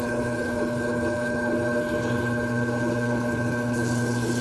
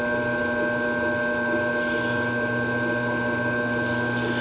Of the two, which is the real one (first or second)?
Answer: second